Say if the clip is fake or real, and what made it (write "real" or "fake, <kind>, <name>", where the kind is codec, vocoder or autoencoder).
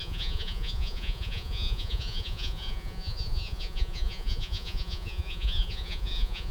fake, vocoder, Vocos